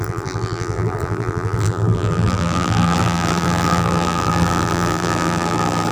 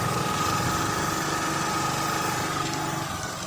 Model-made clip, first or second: first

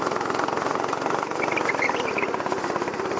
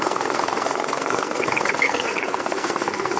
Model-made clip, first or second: second